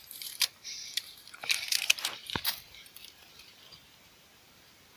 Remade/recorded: remade